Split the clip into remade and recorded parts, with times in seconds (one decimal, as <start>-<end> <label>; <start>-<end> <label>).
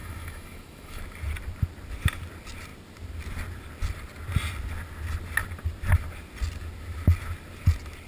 0.0-1.0 remade; 1.0-8.1 recorded